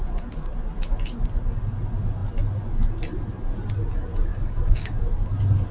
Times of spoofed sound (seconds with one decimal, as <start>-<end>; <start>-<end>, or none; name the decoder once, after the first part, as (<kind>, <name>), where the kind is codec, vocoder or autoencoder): 4.3-5.0 (codec, DAC)